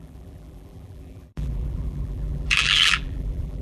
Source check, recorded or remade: remade